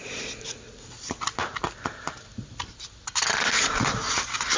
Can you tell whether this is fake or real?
real